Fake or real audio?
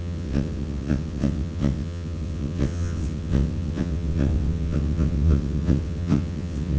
fake